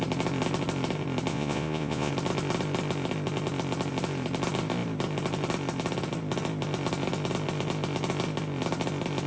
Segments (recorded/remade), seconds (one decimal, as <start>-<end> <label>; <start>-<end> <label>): 0.0-1.3 recorded; 1.3-2.1 remade; 2.1-9.3 recorded